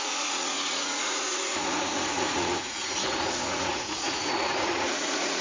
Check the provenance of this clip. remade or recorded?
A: remade